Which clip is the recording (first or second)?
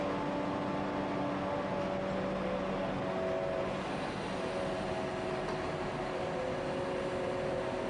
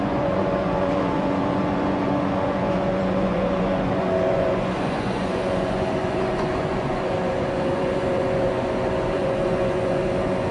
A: first